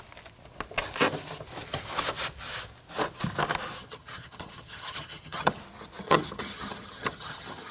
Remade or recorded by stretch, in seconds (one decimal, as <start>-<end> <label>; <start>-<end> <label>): 0.0-3.8 recorded; 3.8-5.6 remade; 5.6-6.0 recorded; 6.0-7.7 remade